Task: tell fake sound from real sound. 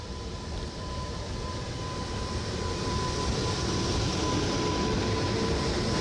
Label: fake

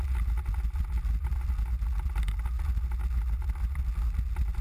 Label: real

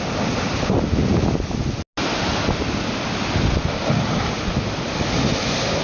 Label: real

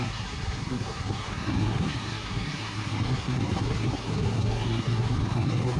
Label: fake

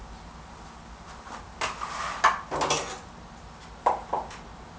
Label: real